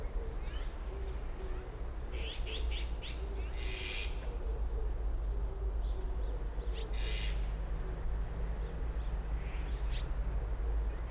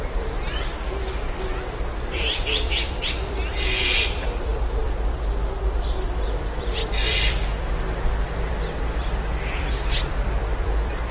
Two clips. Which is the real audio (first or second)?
first